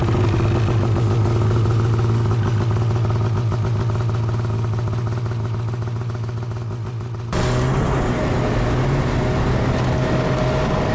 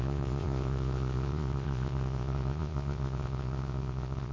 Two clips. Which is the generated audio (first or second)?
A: second